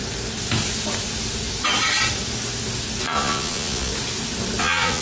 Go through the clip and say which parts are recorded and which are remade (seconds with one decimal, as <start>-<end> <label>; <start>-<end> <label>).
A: 0.0-3.0 recorded; 3.0-3.9 remade; 3.9-4.6 recorded; 4.6-5.0 remade